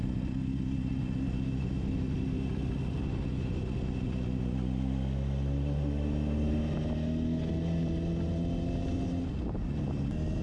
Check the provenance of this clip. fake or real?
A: real